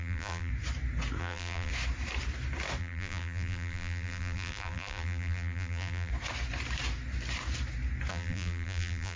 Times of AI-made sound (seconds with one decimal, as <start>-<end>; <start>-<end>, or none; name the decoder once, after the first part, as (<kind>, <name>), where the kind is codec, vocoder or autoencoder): 0.0-0.5 (vocoder, BigVGAN v2); 1.2-1.7; 2.8-6.1; 8.1-9.2